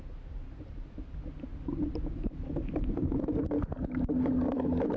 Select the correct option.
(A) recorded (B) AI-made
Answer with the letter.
A